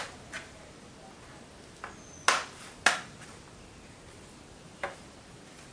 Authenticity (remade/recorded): recorded